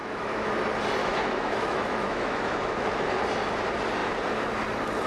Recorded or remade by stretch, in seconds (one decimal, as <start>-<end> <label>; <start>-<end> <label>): 0.0-0.5 remade; 0.5-1.0 recorded; 1.0-3.1 remade; 3.1-5.1 recorded